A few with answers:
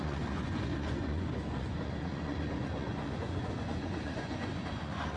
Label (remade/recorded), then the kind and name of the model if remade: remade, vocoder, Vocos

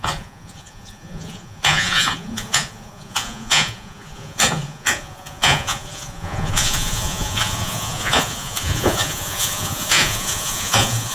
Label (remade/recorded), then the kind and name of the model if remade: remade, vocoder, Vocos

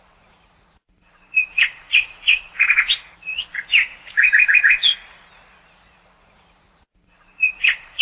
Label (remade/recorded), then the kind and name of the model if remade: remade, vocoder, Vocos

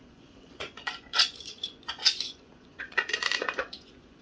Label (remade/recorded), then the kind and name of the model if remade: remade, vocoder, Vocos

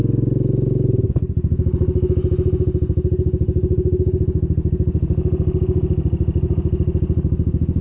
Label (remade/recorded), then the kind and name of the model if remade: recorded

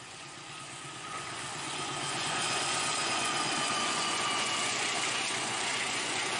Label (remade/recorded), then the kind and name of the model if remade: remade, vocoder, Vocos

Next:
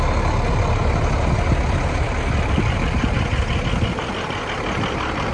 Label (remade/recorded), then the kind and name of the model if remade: recorded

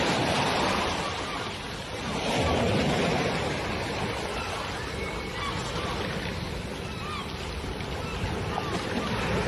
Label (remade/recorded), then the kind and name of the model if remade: recorded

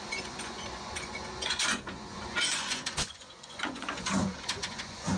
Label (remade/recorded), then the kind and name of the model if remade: remade, vocoder, Vocos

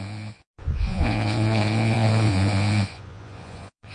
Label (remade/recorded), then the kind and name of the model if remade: remade, vocoder, Vocos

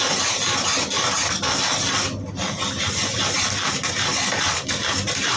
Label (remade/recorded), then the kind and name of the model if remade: recorded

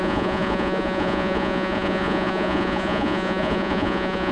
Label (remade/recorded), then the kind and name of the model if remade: remade, vocoder, Vocos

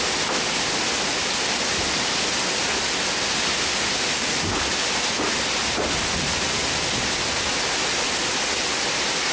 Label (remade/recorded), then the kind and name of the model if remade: recorded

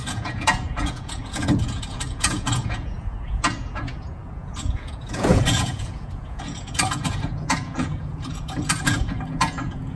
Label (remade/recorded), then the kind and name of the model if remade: remade, vocoder, Vocos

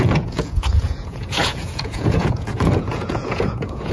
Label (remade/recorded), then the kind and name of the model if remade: remade, vocoder, Vocos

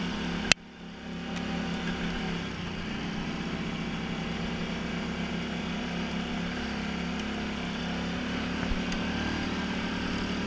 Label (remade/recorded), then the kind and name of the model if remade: recorded